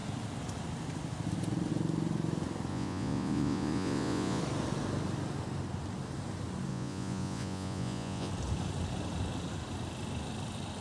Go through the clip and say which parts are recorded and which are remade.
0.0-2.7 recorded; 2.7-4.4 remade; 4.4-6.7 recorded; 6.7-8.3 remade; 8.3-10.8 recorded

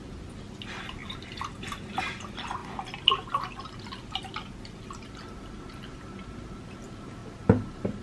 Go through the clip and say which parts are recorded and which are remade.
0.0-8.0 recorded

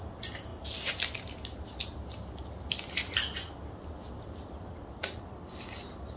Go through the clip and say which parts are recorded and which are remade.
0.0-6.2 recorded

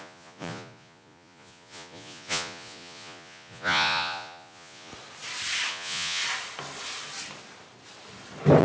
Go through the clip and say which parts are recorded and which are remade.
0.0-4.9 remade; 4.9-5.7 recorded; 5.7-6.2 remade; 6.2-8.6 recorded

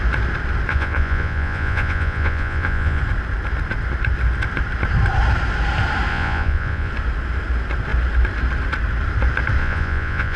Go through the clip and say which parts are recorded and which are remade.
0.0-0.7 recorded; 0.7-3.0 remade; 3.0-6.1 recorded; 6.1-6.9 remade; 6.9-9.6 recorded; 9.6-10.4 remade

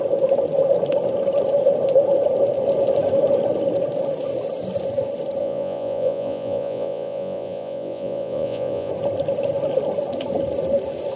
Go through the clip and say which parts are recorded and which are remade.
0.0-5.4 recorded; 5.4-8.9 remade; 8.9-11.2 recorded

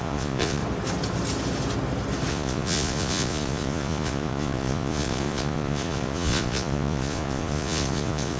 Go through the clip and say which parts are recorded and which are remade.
0.0-0.6 remade; 0.6-2.3 recorded; 2.3-8.4 remade